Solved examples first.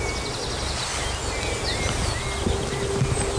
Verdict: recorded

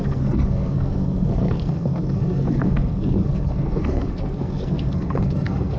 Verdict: remade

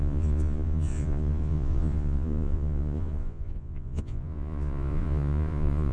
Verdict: remade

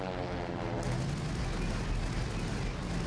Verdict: recorded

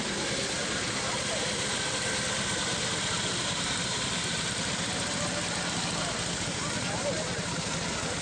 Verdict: recorded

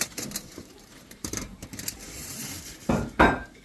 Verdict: remade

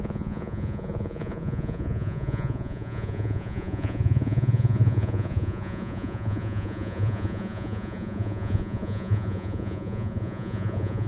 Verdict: remade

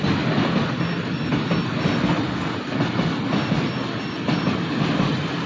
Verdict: recorded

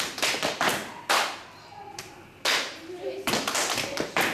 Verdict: remade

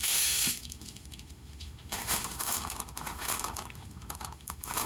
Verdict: remade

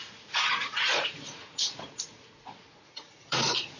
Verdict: remade